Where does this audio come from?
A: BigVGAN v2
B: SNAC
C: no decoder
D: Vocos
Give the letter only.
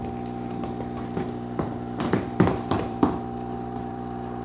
A